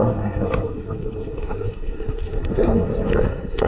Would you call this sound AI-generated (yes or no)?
yes